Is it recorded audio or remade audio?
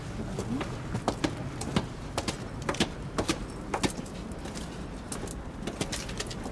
recorded